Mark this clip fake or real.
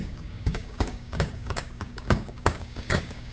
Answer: fake